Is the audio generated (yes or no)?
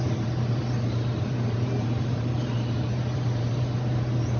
yes